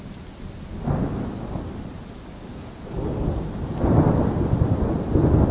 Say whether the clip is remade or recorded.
recorded